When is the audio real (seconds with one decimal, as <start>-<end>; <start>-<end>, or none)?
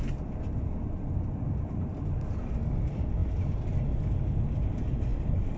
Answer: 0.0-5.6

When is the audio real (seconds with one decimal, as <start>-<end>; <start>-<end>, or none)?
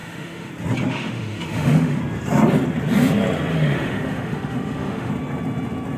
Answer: 0.5-0.9; 2.0-3.5; 5.1-6.0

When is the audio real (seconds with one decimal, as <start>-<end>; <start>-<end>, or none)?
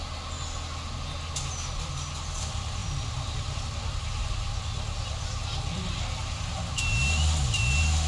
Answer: 0.0-8.1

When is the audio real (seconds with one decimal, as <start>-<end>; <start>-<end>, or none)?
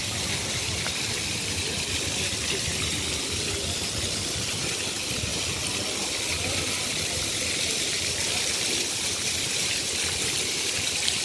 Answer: 0.0-11.2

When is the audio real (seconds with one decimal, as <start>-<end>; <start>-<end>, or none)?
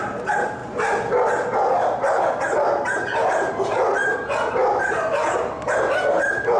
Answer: 0.0-6.6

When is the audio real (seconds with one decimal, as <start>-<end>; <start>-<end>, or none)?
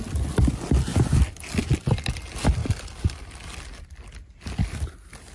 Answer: 0.0-5.3